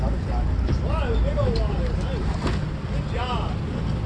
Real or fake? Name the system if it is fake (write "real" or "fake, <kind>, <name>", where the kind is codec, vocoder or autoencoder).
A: real